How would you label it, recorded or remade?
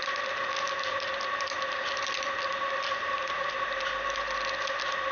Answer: recorded